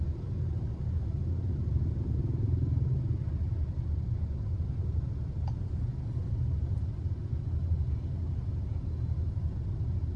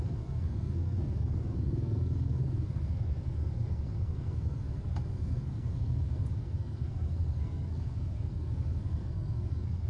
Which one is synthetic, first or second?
second